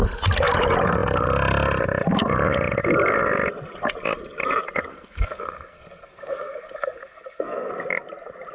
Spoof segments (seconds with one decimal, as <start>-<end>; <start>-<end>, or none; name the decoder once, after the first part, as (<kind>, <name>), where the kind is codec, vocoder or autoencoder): 4.9-7.7 (codec, SNAC)